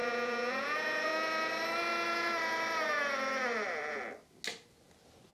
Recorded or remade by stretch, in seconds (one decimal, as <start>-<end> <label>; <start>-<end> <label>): 0.0-1.1 remade; 1.1-5.3 recorded